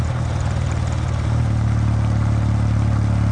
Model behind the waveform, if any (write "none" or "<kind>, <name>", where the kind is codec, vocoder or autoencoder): none